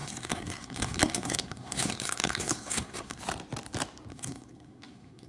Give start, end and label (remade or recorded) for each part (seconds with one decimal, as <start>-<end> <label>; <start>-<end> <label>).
0.0-3.2 remade; 3.2-4.1 recorded; 4.1-5.3 remade